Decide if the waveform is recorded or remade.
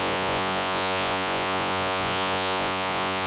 remade